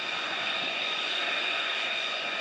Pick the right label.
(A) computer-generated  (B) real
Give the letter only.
A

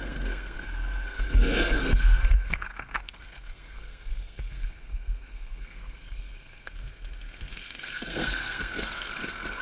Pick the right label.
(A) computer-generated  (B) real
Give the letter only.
A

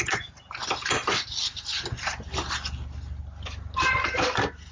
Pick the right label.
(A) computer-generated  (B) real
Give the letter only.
B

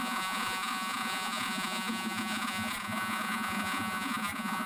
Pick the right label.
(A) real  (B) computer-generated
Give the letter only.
B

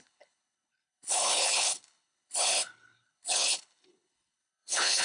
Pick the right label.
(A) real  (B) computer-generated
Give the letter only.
B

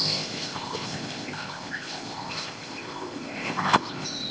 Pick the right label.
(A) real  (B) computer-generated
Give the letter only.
B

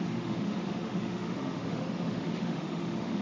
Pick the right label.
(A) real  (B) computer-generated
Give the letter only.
B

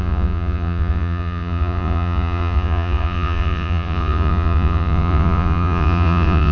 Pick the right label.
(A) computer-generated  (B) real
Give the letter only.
A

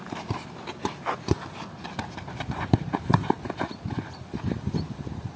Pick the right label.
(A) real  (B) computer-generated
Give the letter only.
B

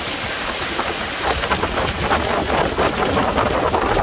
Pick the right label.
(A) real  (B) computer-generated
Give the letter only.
A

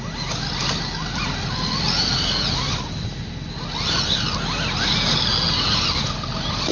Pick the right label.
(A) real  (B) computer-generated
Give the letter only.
A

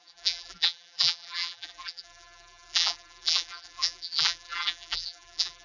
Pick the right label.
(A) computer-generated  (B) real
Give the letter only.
A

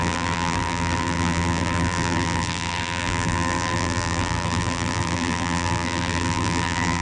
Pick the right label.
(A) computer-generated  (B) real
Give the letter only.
A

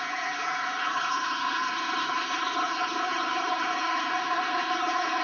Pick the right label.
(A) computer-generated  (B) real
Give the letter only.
A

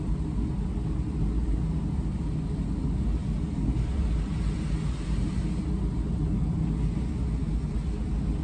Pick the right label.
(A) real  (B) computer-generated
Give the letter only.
A